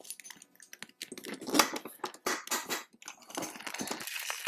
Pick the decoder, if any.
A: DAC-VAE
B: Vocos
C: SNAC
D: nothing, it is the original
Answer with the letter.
D